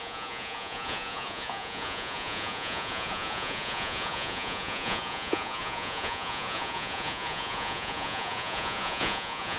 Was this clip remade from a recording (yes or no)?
yes